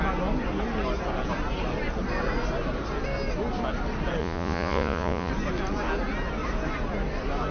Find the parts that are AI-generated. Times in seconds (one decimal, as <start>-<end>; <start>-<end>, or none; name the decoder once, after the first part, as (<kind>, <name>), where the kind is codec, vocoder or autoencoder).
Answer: 4.2-5.3 (vocoder, Vocos)